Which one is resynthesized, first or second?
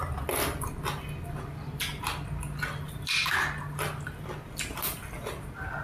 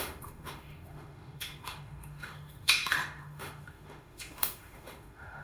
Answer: second